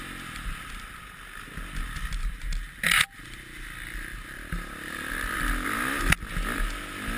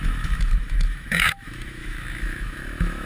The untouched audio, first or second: first